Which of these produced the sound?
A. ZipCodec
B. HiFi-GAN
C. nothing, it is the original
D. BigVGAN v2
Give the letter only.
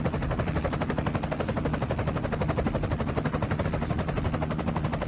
C